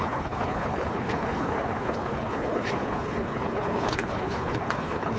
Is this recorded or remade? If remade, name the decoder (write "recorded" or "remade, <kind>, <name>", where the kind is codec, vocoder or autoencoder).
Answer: remade, codec, HILCodec